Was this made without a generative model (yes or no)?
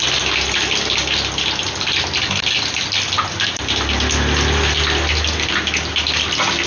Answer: yes